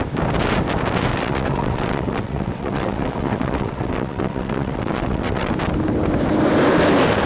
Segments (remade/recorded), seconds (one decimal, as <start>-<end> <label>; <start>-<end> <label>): 0.0-1.1 recorded; 1.1-5.5 remade; 5.5-7.3 recorded